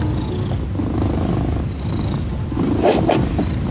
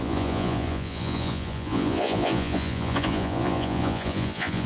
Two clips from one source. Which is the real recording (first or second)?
first